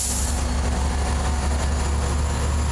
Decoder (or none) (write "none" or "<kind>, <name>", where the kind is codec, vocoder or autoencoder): none